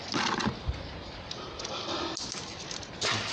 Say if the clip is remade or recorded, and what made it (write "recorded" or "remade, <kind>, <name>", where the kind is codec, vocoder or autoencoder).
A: recorded